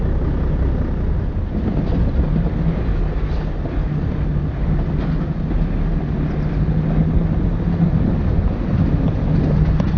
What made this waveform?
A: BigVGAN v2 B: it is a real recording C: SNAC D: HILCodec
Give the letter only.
B